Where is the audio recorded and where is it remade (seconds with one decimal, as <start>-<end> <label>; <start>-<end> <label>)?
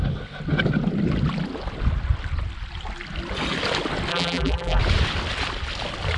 0.0-4.1 recorded; 4.1-4.8 remade; 4.8-6.2 recorded